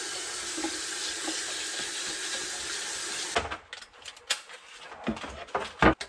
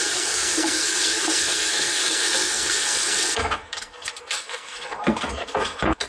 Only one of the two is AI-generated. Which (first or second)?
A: second